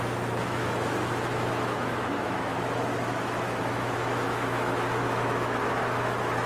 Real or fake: fake